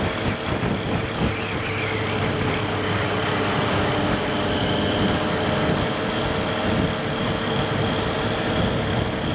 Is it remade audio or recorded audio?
recorded